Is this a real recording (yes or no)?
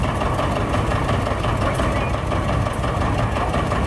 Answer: yes